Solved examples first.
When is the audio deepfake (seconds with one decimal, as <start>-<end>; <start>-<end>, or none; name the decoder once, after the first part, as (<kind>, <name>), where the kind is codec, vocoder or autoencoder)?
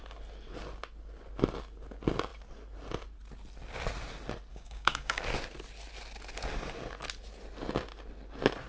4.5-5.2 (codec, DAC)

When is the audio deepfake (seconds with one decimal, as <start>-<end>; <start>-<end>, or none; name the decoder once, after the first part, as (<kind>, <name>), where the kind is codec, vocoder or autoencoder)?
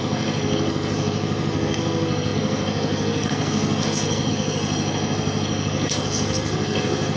0.0-7.2 (codec, SNAC)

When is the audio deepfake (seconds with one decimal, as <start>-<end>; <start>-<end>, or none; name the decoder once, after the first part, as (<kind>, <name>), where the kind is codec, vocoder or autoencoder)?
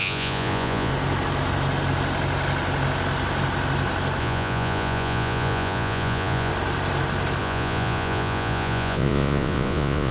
0.0-0.9 (vocoder, Vocos); 4.2-6.5; 7.4-10.1